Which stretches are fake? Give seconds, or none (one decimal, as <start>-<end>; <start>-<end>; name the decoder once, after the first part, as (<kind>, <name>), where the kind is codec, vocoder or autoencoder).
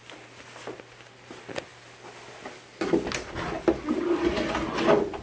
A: none